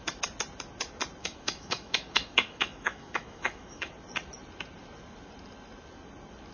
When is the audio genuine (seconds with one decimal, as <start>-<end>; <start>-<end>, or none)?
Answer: 0.0-1.2; 3.9-6.5